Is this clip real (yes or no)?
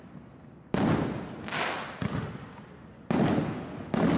yes